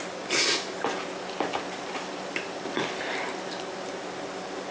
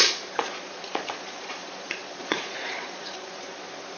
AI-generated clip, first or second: second